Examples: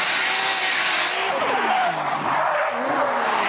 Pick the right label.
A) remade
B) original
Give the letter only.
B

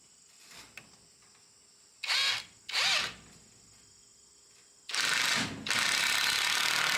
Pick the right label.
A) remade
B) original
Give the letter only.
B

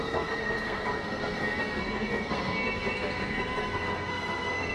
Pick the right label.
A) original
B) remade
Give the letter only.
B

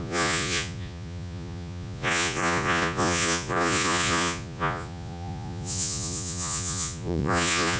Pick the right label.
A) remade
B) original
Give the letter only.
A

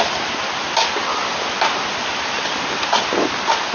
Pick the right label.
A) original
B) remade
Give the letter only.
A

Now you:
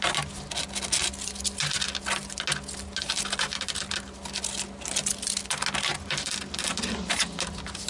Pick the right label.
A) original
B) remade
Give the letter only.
A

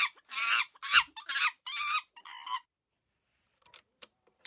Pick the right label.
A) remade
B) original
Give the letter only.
A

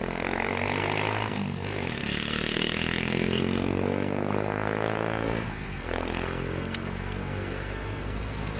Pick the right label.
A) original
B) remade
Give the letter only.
B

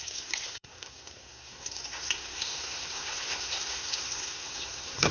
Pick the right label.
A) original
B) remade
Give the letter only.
B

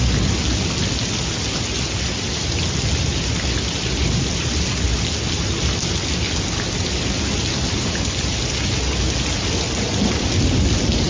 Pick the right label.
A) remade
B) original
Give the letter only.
B